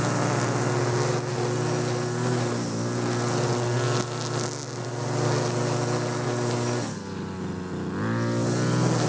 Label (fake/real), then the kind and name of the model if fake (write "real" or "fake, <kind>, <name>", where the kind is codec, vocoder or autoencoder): real